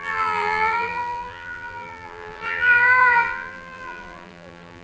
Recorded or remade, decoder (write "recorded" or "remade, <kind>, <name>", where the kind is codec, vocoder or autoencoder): remade, vocoder, BigVGAN v2